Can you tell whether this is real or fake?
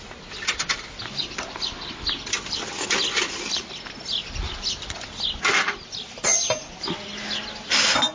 real